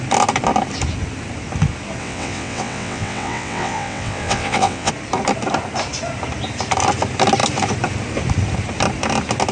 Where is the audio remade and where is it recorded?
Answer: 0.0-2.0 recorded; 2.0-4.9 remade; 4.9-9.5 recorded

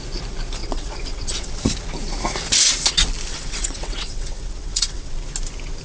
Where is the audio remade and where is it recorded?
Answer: 0.0-0.6 recorded; 0.6-1.6 remade; 1.6-3.3 recorded; 3.3-5.1 remade; 5.1-5.8 recorded

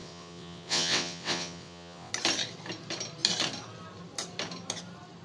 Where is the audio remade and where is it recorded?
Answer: 0.0-2.1 remade; 2.1-5.2 recorded